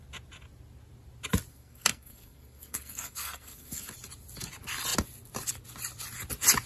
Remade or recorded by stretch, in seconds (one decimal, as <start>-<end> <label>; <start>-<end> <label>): 0.0-1.5 recorded; 1.5-3.9 remade; 3.9-6.7 recorded